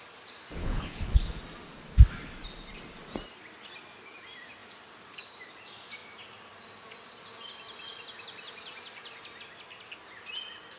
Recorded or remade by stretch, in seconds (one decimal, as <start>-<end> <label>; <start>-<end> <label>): 0.0-0.6 recorded; 0.6-1.4 remade; 1.4-10.8 recorded